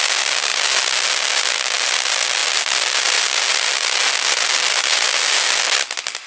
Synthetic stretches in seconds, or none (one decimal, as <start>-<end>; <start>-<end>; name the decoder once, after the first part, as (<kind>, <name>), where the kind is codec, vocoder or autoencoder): none